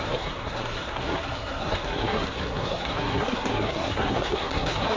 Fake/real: fake